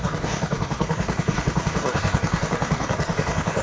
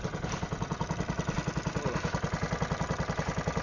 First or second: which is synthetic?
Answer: first